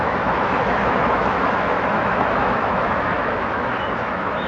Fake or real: fake